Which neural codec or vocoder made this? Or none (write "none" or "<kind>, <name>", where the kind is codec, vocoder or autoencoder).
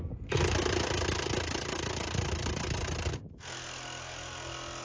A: none